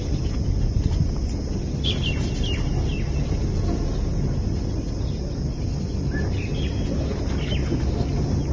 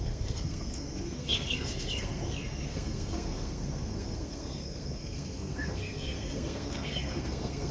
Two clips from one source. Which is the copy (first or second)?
second